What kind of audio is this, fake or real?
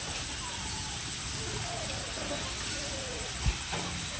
real